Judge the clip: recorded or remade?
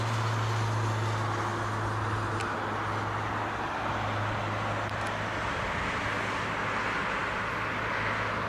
recorded